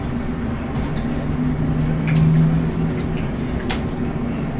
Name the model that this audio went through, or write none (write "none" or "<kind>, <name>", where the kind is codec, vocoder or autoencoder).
none